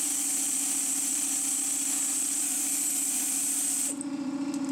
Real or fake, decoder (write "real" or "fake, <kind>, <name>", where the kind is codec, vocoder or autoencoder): fake, vocoder, BigVGAN v2